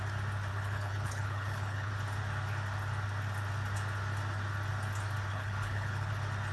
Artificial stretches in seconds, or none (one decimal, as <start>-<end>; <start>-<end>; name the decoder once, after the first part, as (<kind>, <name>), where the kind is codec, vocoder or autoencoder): 0.5-1.9 (codec, HILCodec); 5.3-6.1